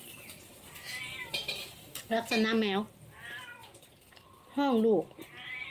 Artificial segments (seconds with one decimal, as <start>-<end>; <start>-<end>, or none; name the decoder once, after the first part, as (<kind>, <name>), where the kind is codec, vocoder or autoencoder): none